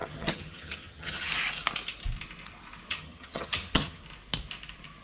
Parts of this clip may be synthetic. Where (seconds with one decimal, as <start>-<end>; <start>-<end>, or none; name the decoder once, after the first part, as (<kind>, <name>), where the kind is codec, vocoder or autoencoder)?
0.0-1.3 (vocoder, HiFi-GAN); 2.9-4.0